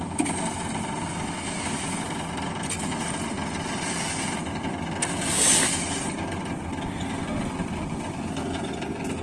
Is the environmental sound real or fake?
real